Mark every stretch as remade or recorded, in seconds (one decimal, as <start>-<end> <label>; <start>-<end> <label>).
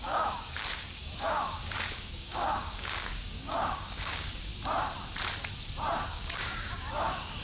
0.0-4.5 remade; 4.5-6.1 recorded; 6.1-7.4 remade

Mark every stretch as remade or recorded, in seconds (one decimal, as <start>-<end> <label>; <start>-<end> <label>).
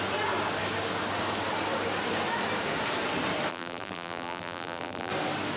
0.0-3.5 recorded; 3.5-5.1 remade; 5.1-5.6 recorded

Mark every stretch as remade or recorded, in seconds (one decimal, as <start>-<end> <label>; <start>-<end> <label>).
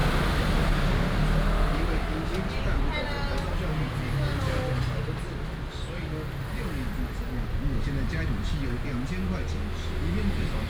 0.0-10.7 recorded